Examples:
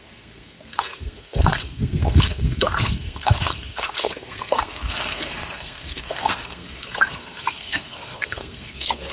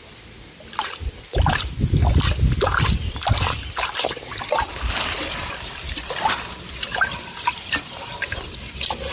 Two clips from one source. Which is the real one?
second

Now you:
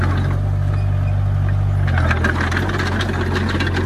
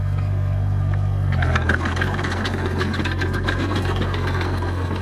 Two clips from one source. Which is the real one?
first